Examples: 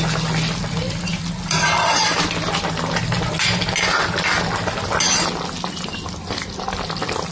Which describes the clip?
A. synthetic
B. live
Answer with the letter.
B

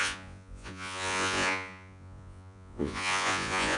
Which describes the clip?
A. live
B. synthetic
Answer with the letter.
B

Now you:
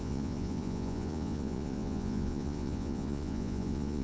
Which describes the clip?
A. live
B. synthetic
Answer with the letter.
B